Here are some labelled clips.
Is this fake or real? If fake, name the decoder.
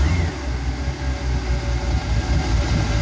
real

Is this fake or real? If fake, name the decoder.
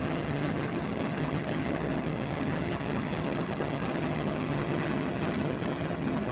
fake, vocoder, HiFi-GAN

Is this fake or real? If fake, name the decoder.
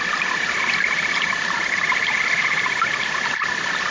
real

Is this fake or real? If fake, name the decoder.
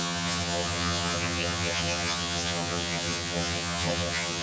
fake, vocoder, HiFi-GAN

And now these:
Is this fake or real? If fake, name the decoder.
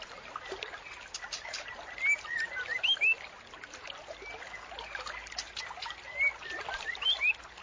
real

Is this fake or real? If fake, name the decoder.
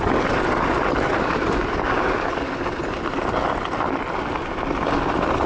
real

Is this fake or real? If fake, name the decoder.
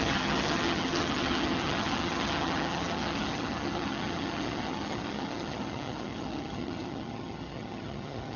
fake, vocoder, HiFi-GAN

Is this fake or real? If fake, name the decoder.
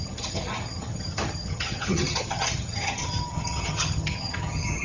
fake, vocoder, HiFi-GAN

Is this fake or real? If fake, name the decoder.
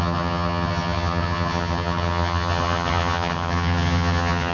fake, vocoder, HiFi-GAN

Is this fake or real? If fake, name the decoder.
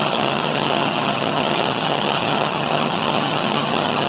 fake, vocoder, HiFi-GAN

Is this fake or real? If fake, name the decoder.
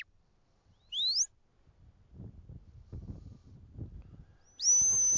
real